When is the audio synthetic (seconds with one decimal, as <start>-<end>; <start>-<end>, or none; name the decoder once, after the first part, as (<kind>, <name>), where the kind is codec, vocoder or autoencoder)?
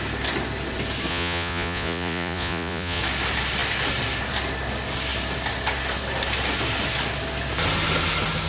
1.1-3.0 (vocoder, Vocos)